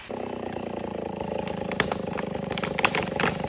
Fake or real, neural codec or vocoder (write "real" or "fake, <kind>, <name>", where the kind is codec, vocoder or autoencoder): fake, vocoder, BigVGAN v2